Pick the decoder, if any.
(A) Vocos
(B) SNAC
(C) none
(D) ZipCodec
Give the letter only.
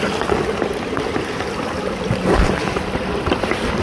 C